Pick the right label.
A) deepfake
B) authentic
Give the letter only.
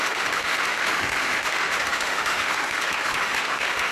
A